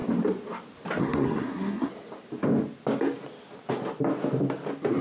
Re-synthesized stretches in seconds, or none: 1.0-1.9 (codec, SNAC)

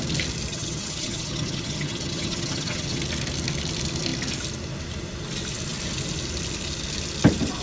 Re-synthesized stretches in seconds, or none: 0.5-3.0 (vocoder, HiFi-GAN)

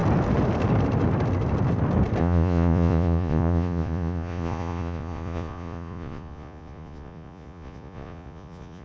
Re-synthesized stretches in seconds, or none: 2.2-8.8 (vocoder, Vocos)

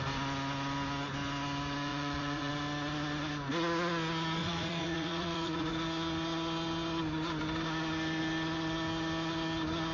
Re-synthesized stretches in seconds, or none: 1.9-2.5 (vocoder, Vocos); 4.4-5.7